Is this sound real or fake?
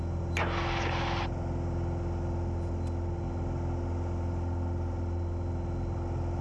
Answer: real